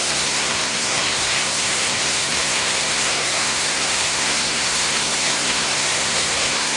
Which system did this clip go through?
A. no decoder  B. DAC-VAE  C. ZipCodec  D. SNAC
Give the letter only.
D